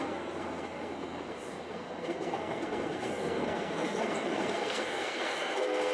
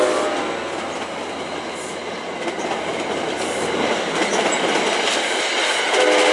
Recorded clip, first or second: second